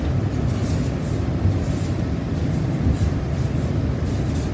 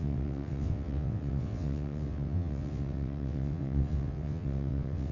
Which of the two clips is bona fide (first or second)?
first